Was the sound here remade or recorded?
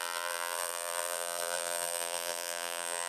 remade